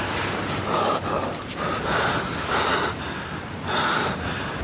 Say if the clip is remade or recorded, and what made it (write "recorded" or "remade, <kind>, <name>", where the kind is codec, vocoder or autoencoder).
recorded